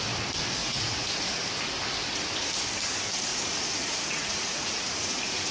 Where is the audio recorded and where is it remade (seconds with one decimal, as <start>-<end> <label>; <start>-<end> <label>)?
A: 0.0-0.6 recorded; 0.6-1.3 remade; 1.3-3.3 recorded; 3.3-5.5 remade